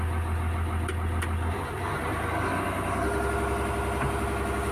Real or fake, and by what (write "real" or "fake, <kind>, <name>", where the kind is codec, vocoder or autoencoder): real